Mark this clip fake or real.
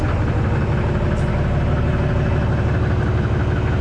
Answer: real